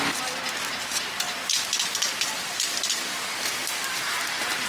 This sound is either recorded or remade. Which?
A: recorded